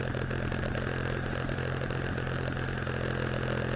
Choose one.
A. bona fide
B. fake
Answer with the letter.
A